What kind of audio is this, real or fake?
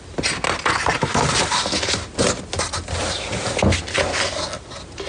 real